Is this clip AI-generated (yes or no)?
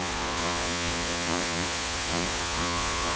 yes